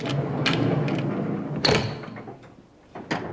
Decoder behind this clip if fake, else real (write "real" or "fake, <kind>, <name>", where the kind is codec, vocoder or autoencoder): real